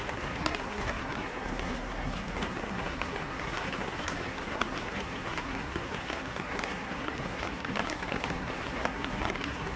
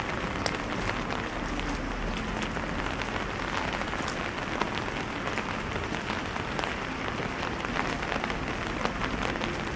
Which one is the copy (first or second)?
first